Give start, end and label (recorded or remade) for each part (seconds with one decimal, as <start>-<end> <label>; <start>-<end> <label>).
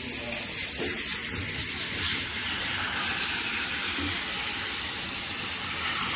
0.0-1.4 recorded; 1.4-5.1 remade; 5.1-6.2 recorded